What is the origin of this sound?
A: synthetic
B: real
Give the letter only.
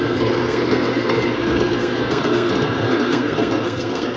A